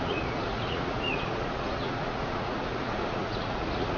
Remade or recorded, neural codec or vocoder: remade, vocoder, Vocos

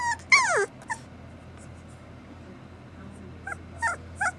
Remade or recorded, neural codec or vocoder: recorded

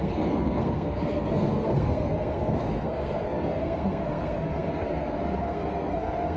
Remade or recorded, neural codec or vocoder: remade, codec, SNAC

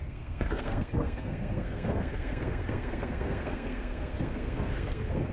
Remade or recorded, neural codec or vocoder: remade, codec, SNAC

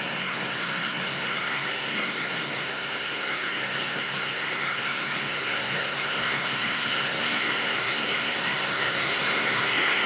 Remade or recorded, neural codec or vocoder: remade, codec, SNAC